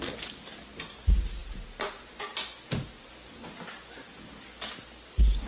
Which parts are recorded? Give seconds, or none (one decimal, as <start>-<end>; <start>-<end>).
0.0-5.5